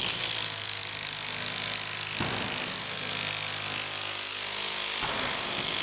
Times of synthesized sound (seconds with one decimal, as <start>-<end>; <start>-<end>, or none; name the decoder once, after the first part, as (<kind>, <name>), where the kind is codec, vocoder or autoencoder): none